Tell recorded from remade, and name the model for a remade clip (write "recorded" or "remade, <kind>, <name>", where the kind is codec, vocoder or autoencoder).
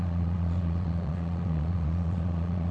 remade, vocoder, Vocos